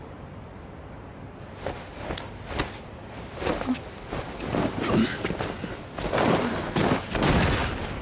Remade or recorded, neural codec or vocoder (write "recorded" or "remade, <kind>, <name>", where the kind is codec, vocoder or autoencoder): recorded